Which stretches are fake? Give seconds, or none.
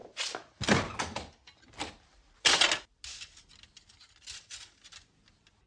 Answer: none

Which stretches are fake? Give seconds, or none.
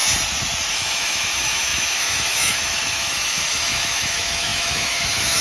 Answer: 0.7-5.4 (autoencoder, DAC-VAE)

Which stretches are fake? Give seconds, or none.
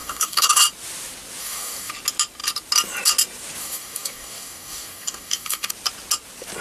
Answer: 0.0-0.6 (codec, DAC); 1.4-1.9; 3.6-5.7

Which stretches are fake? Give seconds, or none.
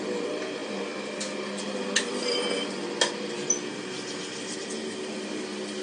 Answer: none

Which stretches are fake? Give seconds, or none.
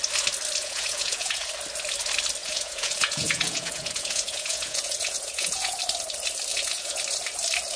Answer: 0.6-1.5 (vocoder, Vocos); 2.4-5.8; 6.5-7.0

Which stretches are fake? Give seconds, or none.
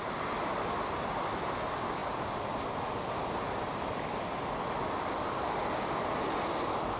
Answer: none